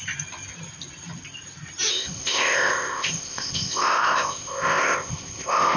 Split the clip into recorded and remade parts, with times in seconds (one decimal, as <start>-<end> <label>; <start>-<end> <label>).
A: 0.0-1.9 recorded; 1.9-5.8 remade